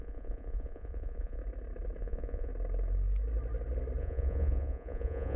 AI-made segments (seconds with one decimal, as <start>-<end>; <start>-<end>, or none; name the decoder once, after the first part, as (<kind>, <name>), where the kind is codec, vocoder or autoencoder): 0.0-1.4 (vocoder, Vocos); 2.0-2.5; 4.0-5.4

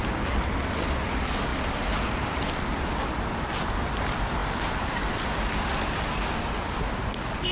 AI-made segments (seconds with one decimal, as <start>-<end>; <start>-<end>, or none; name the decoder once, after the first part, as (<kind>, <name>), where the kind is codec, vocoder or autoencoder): 1.5-2.6 (vocoder, BigVGAN v2); 4.4-6.3